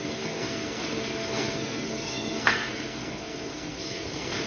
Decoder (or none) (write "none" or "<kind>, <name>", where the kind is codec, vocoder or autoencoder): codec, SNAC